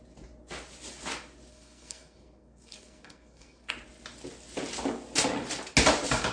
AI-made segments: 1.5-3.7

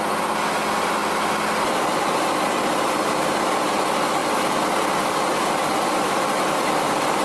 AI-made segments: none

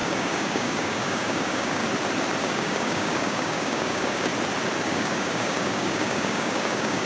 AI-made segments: 0.0-1.8; 2.4-4.3; 4.8-7.1

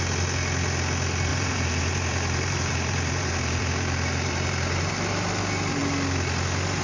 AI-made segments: 1.3-4.9

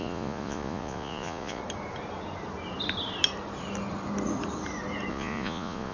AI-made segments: 0.0-1.6; 5.1-5.9

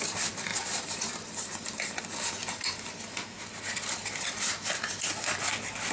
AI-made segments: 0.5-2.0

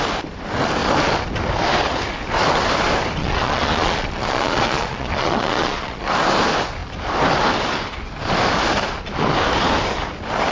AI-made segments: 3.2-6.1